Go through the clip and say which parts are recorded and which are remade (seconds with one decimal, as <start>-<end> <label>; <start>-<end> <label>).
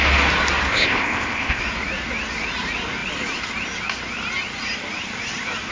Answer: 0.0-0.7 recorded; 0.7-1.6 remade; 1.6-5.7 recorded